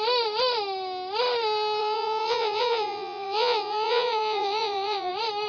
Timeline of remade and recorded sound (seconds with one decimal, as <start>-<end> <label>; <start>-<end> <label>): 0.0-1.8 recorded; 1.8-5.1 remade; 5.1-5.5 recorded